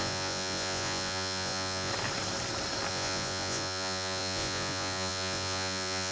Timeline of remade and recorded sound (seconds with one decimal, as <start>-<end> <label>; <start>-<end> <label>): 0.0-1.9 remade; 1.9-2.9 recorded; 2.9-6.1 remade